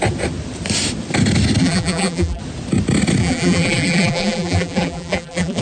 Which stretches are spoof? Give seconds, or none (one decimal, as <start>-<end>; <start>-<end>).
1.6-2.4; 3.2-5.6